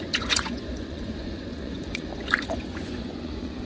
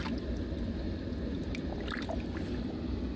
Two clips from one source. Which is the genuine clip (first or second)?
second